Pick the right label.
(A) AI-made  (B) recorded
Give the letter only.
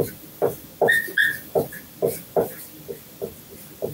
B